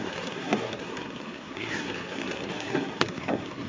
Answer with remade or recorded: remade